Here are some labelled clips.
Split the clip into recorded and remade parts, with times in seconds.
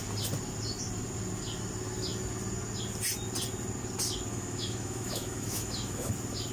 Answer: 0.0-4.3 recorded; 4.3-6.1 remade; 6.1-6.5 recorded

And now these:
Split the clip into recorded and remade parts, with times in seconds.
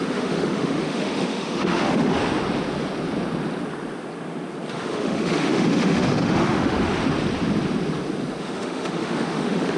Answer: 0.0-2.2 remade; 2.2-4.7 recorded; 4.7-7.0 remade; 7.0-8.4 recorded; 8.4-9.8 remade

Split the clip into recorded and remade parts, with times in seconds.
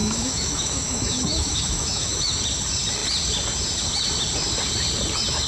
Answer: 0.0-2.4 remade; 2.4-5.5 recorded